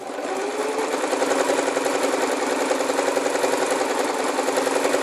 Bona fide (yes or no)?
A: yes